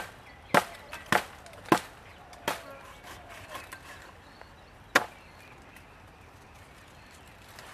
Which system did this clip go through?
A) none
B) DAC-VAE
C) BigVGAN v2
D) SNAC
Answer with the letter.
A